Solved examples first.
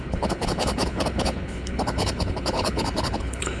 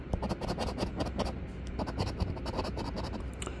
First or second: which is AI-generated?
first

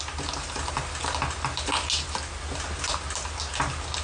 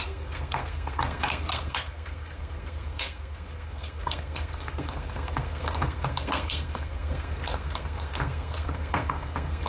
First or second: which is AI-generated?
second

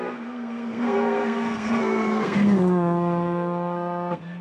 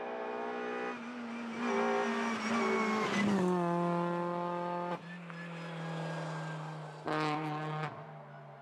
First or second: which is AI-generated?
first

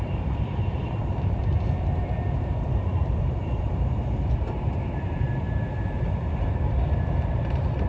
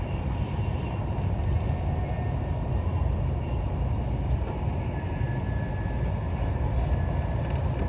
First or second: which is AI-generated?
first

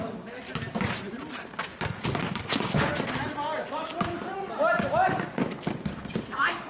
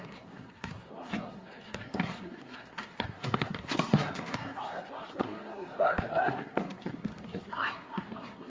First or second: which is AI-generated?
second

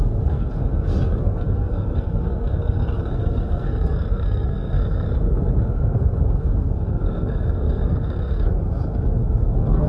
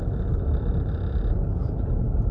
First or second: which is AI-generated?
first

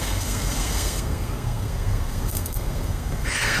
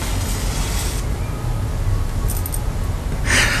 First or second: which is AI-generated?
first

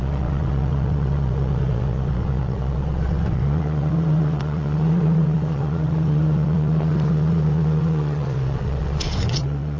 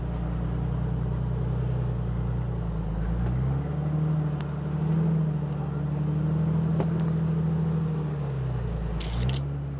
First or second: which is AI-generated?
first